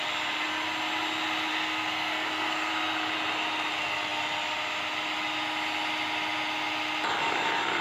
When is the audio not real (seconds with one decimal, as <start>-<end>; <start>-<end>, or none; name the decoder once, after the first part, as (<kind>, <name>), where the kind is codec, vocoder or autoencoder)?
1.5-2.7 (codec, SNAC)